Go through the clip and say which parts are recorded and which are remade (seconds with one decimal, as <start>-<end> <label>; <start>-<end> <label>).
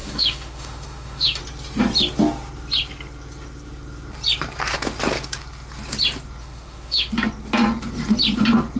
0.0-1.4 remade; 1.4-6.4 recorded; 6.4-7.1 remade; 7.1-8.8 recorded